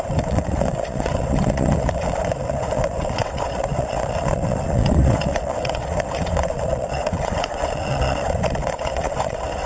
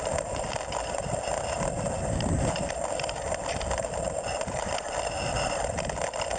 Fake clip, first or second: first